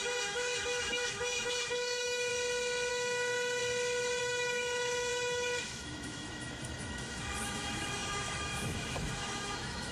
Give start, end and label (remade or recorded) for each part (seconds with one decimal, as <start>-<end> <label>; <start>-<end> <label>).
0.0-2.3 remade; 2.3-2.9 recorded; 2.9-3.6 remade; 3.6-4.2 recorded; 4.2-9.9 remade